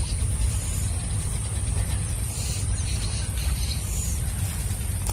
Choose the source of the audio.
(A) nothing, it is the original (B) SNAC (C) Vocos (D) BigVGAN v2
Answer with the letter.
D